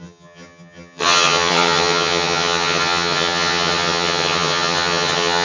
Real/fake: fake